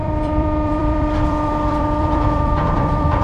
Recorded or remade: remade